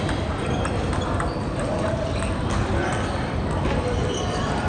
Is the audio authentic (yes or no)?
no